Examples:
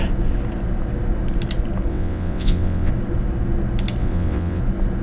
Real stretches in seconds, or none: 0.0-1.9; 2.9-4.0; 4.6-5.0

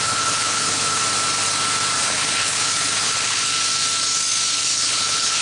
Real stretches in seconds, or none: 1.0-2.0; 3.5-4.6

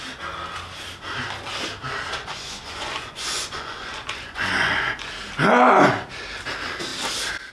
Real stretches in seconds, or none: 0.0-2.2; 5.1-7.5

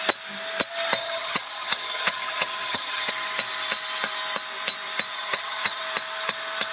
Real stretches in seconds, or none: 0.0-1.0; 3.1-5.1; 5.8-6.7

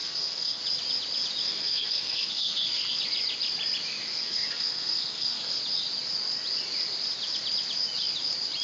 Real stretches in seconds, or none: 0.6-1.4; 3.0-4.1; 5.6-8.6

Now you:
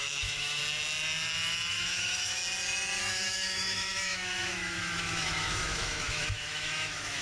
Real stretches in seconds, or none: 0.6-1.7; 2.4-3.0

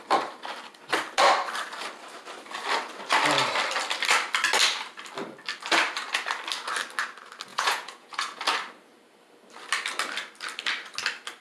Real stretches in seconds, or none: 0.0-7.5; 8.4-11.4

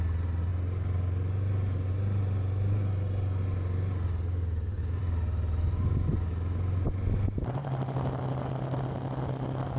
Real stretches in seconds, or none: 0.0-9.8